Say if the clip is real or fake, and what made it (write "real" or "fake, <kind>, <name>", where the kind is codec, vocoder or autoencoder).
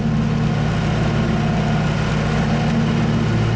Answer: real